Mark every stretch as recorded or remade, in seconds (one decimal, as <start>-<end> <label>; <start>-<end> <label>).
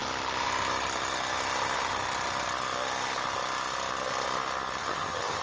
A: 0.0-4.8 recorded; 4.8-5.4 remade